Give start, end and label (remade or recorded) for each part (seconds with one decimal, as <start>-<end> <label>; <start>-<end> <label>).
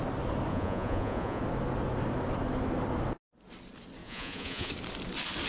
0.0-0.5 recorded; 0.5-1.4 remade; 1.4-4.0 recorded; 4.0-4.7 remade; 4.7-5.5 recorded